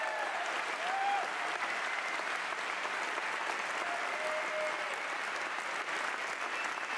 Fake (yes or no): no